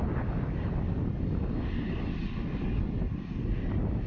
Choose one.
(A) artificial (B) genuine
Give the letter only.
B